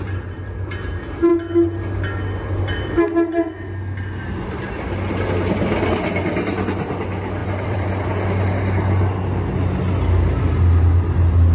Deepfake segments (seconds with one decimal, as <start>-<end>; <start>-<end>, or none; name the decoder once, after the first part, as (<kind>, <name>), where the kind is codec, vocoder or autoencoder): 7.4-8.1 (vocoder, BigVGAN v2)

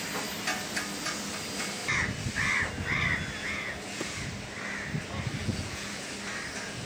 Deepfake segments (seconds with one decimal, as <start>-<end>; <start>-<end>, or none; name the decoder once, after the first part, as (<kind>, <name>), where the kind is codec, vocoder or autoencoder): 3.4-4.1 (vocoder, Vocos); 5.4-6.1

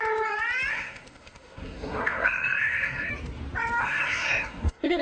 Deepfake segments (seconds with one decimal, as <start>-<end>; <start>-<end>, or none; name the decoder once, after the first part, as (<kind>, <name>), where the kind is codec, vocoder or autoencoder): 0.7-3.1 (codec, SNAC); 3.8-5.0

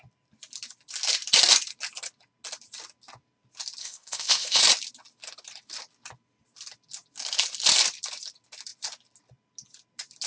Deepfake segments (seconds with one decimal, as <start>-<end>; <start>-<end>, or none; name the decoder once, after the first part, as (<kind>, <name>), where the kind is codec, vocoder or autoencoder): 3.8-4.6 (codec, ZipCodec)

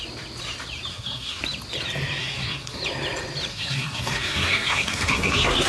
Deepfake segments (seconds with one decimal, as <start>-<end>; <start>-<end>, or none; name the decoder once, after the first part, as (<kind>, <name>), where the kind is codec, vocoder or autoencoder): 0.9-1.4 (codec, SNAC); 2.2-2.8; 3.5-5.7